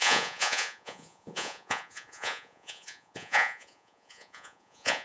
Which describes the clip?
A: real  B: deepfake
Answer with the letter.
B